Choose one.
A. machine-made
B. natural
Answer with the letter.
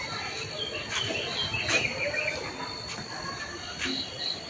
B